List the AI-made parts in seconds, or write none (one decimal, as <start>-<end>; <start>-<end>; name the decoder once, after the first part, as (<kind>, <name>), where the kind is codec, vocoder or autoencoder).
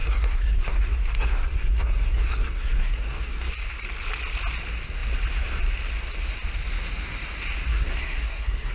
0.0-3.5 (codec, SNAC); 7.7-8.7